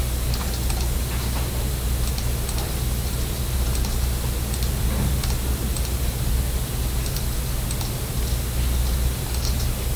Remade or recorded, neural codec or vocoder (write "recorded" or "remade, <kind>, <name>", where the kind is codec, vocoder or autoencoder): recorded